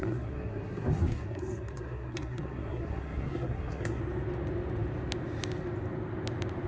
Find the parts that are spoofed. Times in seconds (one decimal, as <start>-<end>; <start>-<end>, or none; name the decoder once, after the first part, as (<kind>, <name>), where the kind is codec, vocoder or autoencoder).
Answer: 0.0-4.0 (codec, SNAC)